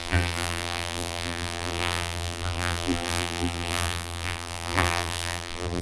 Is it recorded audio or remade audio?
remade